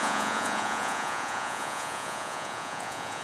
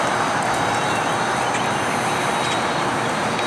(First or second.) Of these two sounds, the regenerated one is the first